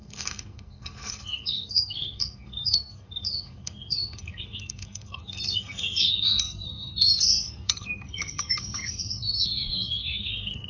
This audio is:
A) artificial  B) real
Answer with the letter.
A